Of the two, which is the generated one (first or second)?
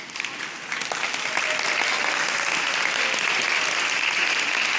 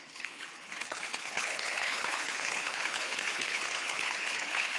second